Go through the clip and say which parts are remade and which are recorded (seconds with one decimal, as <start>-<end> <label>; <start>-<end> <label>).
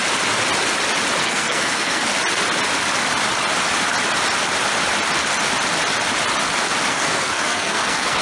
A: 0.0-1.2 recorded; 1.2-2.1 remade; 2.1-6.9 recorded; 6.9-8.2 remade